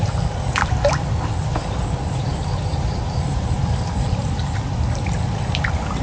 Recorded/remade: remade